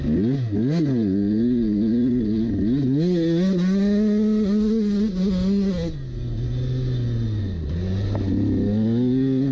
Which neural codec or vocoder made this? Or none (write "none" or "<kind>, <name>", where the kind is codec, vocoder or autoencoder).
none